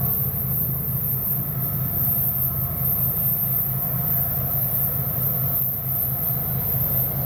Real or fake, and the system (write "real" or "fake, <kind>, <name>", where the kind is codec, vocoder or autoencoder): real